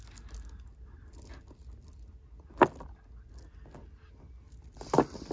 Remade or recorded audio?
recorded